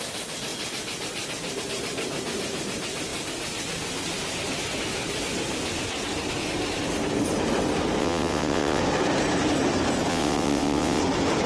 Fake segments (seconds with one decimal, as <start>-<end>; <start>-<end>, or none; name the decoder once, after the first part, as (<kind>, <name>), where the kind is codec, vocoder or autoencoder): 8.0-8.8 (vocoder, WaveNeXt); 10.1-11.0